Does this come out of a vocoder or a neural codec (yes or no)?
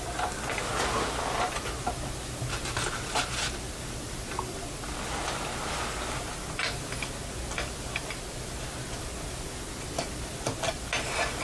no